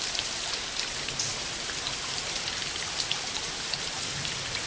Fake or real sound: real